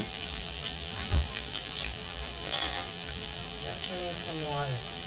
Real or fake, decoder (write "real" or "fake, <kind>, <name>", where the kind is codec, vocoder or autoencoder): fake, vocoder, BigVGAN v2